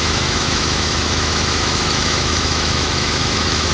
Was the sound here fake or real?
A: fake